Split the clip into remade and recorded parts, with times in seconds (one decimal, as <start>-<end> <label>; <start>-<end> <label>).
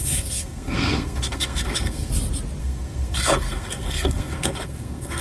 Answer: 0.0-2.1 remade; 2.1-2.6 recorded; 2.6-5.2 remade